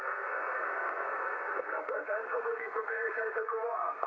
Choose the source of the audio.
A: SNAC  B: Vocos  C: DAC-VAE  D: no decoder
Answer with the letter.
A